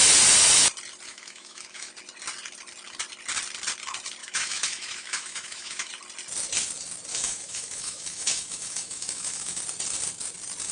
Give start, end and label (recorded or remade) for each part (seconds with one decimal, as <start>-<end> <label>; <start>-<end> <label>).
0.0-1.1 recorded; 1.1-1.9 remade; 1.9-4.2 recorded; 4.2-5.9 remade; 5.9-7.1 recorded; 7.1-9.6 remade; 9.6-10.7 recorded